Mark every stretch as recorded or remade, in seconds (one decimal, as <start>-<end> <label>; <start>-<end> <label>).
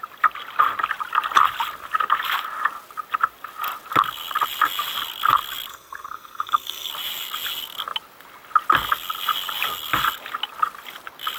0.0-5.7 recorded; 5.7-6.9 remade; 6.9-11.4 recorded